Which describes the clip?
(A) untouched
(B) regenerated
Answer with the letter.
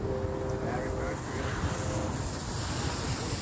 A